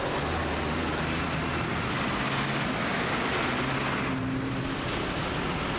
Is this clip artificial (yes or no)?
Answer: no